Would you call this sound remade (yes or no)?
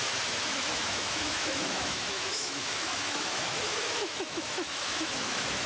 yes